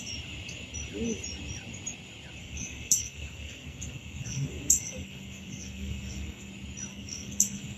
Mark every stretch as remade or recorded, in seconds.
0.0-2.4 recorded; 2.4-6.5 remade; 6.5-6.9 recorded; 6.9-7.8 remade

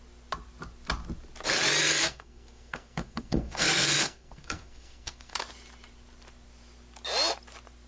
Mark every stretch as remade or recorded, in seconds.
0.0-1.8 recorded; 1.8-5.4 remade; 5.4-7.9 recorded

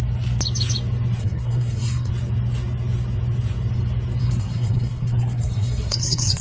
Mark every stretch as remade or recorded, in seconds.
0.0-1.2 recorded; 1.2-2.1 remade; 2.1-4.2 recorded; 4.2-6.4 remade

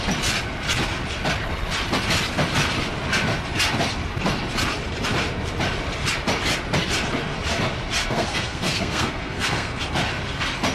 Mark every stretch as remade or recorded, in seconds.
0.0-8.0 recorded; 8.0-9.8 remade; 9.8-10.7 recorded

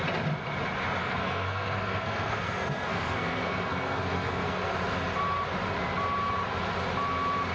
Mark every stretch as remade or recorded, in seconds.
0.0-1.0 recorded; 1.0-4.7 remade; 4.7-7.5 recorded

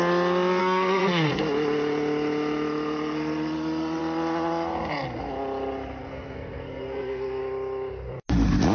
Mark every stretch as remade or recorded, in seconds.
0.0-0.6 recorded; 0.6-1.3 remade; 1.3-6.0 recorded; 6.0-7.4 remade; 7.4-8.7 recorded

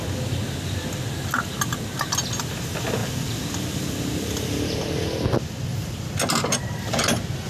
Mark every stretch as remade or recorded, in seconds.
0.0-7.5 recorded

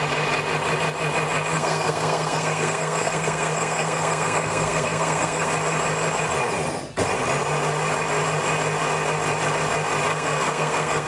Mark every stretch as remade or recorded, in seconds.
0.0-1.5 recorded; 1.5-5.5 remade; 5.5-10.1 recorded; 10.1-11.1 remade